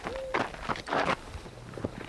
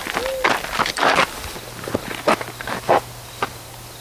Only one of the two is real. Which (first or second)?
second